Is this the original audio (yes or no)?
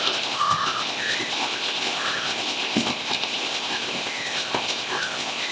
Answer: no